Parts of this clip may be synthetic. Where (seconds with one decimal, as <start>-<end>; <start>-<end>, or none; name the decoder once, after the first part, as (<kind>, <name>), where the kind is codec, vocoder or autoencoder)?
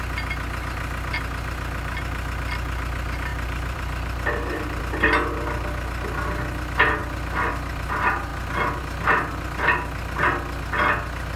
3.3-4.8 (vocoder, BigVGAN v2)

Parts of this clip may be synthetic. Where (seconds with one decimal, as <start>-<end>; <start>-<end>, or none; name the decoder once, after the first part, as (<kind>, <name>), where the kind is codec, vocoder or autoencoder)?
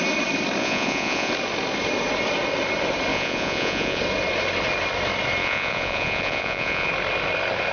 0.6-1.3 (vocoder, Vocos); 3.1-4.0; 5.4-6.9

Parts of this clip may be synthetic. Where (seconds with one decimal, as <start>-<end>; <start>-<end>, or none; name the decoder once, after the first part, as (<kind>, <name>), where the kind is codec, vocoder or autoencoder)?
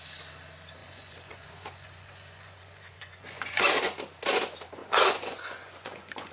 0.8-3.7 (vocoder, Vocos); 4.8-6.3